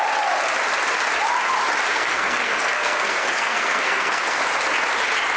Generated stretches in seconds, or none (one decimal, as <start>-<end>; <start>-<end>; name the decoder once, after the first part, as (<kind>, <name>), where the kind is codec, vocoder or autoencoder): 1.9-4.4 (codec, SNAC)